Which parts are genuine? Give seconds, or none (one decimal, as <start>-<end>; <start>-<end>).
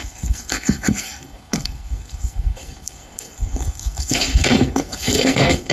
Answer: none